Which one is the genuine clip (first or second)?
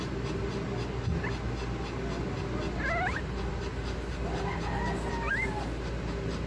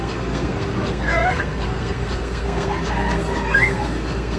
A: first